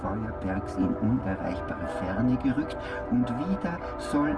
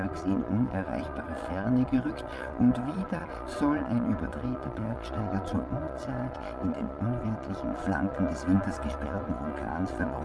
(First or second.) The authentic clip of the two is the first